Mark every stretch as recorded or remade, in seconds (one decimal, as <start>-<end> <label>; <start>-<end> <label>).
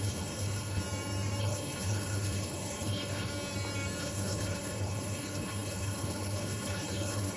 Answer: 0.0-0.8 remade; 0.8-1.4 recorded; 1.4-3.3 remade; 3.3-4.0 recorded; 4.0-7.4 remade